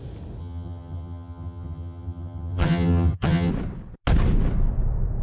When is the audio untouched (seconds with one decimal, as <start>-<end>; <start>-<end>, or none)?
0.0-0.4; 3.5-5.2

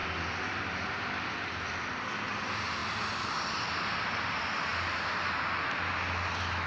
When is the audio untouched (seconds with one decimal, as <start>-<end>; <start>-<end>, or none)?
0.0-6.7

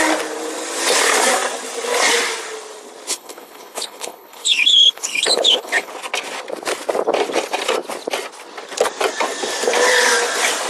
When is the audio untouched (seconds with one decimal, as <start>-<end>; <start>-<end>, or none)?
0.0-3.1; 5.9-10.7

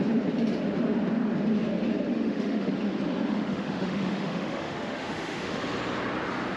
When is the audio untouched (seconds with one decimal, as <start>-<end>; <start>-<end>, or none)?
0.0-2.1; 2.7-3.3; 5.6-6.6

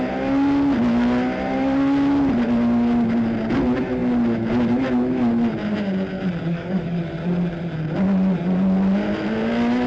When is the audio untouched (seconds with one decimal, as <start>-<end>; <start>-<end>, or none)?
0.0-6.5; 7.0-9.9

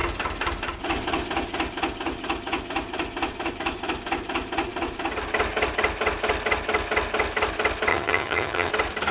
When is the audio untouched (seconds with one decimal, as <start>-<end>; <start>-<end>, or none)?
0.0-7.9; 8.7-9.1

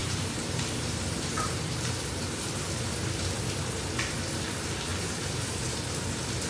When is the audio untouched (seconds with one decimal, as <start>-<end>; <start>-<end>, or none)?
1.7-4.9; 5.6-6.5